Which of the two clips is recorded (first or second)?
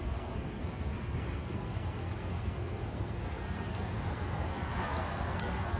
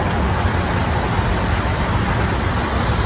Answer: second